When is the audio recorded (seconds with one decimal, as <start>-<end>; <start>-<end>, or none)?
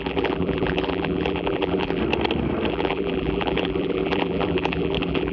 2.0-2.7